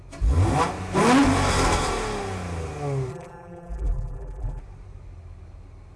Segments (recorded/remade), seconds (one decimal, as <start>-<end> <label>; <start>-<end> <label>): 0.0-3.1 recorded; 3.1-4.6 remade; 4.6-6.0 recorded